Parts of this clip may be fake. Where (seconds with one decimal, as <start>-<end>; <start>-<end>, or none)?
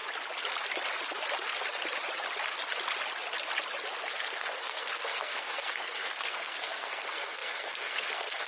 4.1-8.5